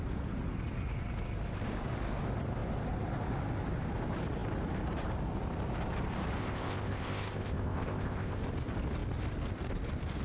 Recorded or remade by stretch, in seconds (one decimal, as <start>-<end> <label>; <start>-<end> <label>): 0.0-6.4 recorded; 6.4-8.4 remade; 8.4-10.2 recorded